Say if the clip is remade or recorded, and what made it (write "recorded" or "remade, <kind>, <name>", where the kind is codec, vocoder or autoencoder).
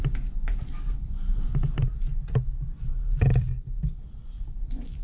recorded